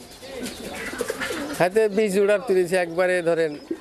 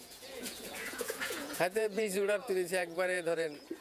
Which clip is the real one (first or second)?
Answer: first